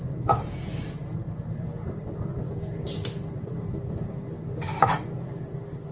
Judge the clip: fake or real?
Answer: real